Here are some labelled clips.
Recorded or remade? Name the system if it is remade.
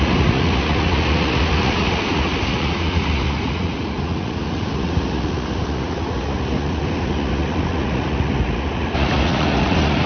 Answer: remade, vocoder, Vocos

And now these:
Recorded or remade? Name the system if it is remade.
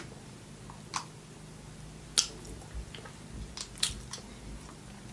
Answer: recorded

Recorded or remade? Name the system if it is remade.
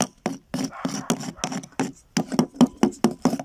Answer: recorded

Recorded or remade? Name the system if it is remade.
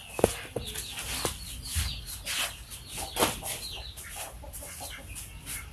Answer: recorded